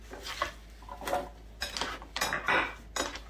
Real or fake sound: real